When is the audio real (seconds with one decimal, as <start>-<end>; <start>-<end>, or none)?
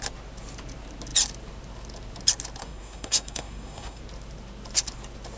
0.0-2.6; 4.0-5.4